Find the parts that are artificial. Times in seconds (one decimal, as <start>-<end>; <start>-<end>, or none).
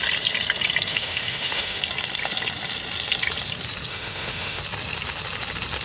0.9-1.8; 3.9-4.6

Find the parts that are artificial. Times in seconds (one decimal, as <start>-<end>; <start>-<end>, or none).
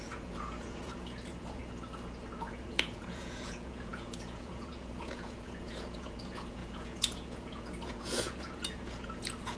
0.0-1.6; 2.5-9.6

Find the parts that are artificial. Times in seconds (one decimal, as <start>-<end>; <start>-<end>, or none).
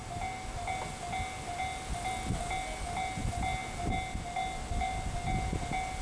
none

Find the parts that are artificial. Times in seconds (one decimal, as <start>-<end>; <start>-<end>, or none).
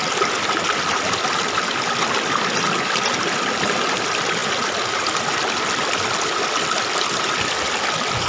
none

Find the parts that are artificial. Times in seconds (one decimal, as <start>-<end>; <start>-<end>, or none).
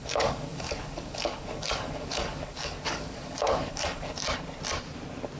0.0-4.2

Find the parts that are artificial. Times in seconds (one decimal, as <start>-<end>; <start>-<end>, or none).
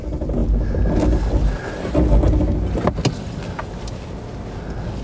none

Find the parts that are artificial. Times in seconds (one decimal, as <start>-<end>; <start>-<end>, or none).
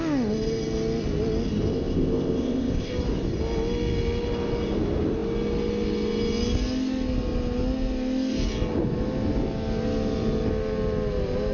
1.7-2.9